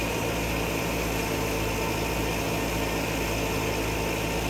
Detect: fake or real real